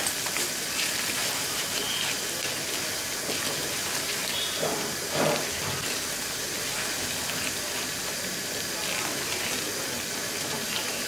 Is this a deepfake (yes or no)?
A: no